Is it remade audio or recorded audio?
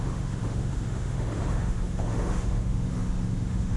remade